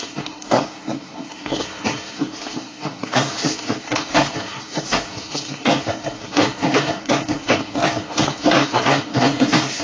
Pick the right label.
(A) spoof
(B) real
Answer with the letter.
A